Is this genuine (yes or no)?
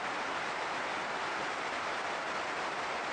yes